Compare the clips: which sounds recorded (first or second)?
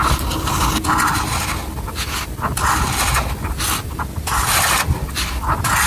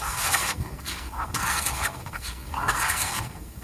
first